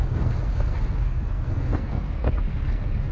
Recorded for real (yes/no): no